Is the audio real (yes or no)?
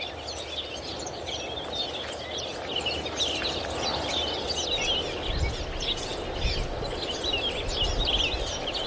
yes